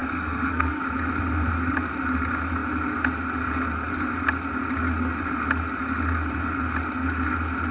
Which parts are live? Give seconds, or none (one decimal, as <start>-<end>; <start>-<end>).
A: 0.8-7.7